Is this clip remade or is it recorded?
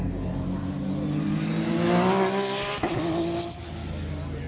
recorded